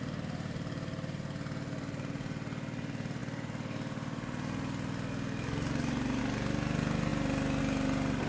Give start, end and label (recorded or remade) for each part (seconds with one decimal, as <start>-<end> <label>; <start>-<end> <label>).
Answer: 0.0-8.3 recorded